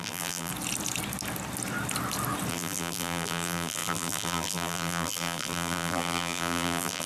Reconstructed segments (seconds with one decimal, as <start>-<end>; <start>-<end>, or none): 0.0-0.5; 2.5-7.1